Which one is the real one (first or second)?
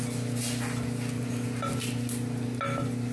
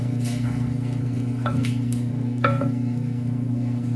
first